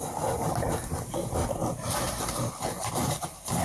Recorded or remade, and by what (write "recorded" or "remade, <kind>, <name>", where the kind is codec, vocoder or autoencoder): recorded